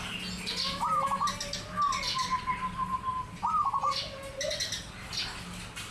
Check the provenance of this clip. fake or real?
real